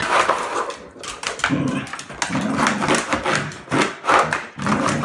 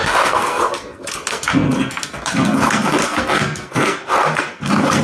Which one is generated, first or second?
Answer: second